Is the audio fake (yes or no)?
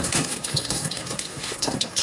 yes